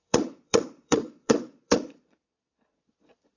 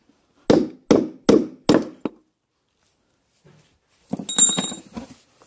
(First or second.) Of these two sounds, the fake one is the first